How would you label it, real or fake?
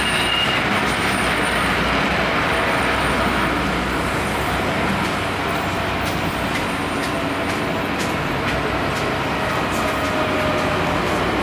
real